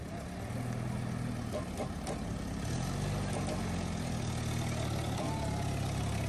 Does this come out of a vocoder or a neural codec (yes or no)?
no